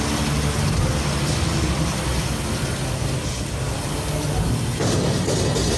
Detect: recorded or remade recorded